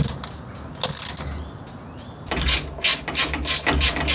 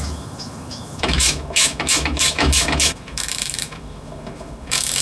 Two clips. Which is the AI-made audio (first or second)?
second